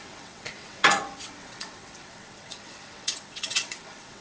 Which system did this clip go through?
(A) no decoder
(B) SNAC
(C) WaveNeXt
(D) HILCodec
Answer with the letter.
C